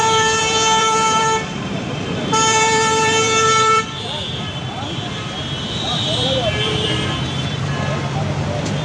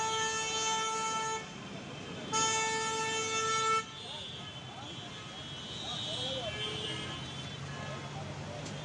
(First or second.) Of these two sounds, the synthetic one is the first